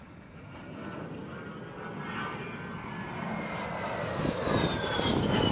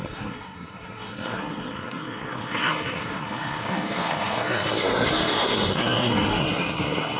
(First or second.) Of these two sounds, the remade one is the second